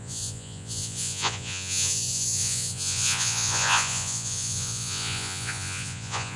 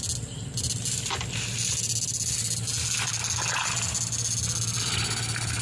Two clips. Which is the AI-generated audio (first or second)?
first